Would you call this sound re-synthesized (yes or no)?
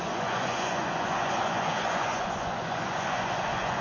yes